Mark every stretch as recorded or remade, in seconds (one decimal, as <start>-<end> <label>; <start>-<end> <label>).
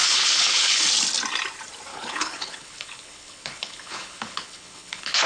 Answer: 0.0-0.8 remade; 0.8-1.9 recorded; 1.9-5.3 remade